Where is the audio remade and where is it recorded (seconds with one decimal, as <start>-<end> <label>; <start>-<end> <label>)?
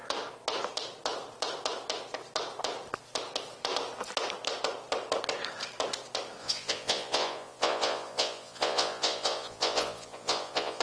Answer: 0.0-6.4 recorded; 6.4-10.8 remade